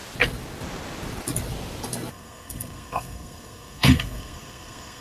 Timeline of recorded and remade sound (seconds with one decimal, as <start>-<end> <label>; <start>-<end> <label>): 0.0-2.1 recorded; 2.1-5.0 remade